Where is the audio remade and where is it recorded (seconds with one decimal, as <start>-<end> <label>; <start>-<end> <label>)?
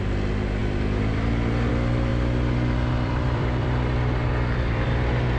0.0-0.6 recorded; 0.6-1.7 remade; 1.7-2.1 recorded; 2.1-5.4 remade